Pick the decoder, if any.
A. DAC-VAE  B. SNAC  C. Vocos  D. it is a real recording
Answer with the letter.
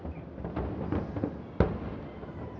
D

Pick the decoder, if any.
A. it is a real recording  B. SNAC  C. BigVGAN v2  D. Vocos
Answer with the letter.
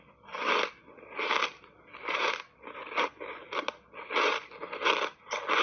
A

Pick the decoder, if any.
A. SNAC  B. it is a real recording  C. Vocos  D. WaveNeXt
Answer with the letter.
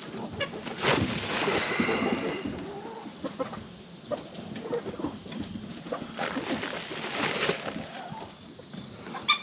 B